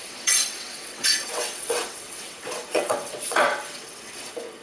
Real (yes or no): no